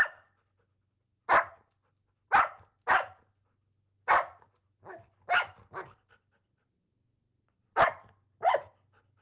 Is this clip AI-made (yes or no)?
no